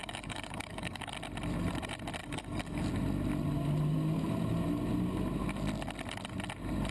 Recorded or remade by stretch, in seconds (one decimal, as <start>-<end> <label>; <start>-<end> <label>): 0.0-1.1 remade; 1.1-2.2 recorded; 2.2-2.9 remade; 2.9-6.9 recorded